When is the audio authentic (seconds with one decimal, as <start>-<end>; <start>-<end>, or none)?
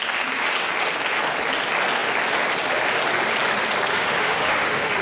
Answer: 0.0-3.9